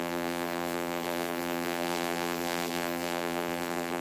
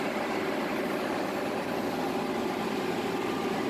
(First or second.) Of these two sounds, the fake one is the first